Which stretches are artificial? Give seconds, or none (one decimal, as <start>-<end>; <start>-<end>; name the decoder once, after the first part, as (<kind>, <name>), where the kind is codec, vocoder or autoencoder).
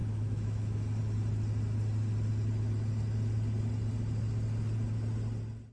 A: 0.0-1.0 (autoencoder, DAC-VAE)